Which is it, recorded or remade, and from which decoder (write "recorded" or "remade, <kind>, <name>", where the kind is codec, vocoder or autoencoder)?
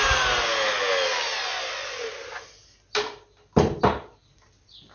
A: recorded